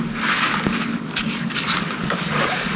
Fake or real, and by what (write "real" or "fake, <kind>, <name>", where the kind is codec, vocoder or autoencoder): fake, codec, DAC